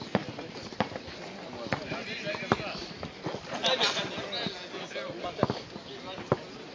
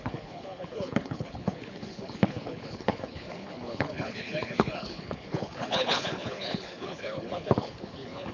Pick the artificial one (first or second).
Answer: second